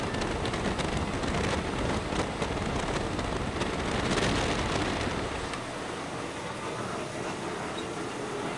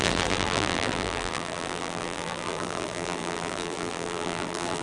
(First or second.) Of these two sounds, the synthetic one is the second